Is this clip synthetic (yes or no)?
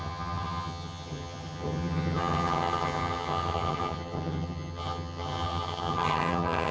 yes